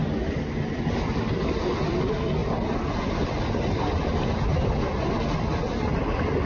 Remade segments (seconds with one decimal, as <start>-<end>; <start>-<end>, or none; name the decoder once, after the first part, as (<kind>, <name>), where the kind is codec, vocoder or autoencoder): none